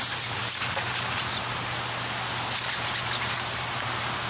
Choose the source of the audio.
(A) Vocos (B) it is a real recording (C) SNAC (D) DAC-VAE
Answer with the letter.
B